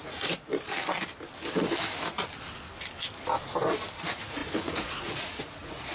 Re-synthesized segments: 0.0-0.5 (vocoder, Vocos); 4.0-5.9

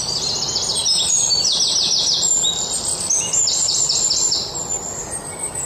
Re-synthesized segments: none

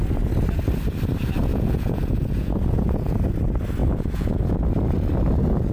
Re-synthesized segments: 1.5-3.2 (vocoder, Vocos); 3.8-4.7

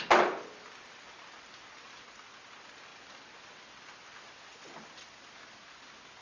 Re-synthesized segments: none

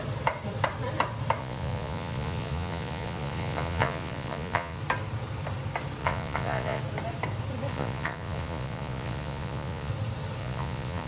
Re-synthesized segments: 1.4-4.8 (vocoder, Vocos); 6.0-6.8; 7.7-9.9; 10.4-11.1

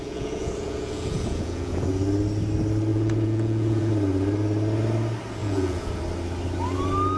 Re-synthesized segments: 0.0-1.9 (vocoder, Vocos); 2.9-3.9; 5.4-6.0

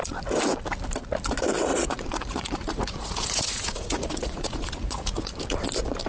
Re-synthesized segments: 1.7-5.4 (vocoder, Vocos)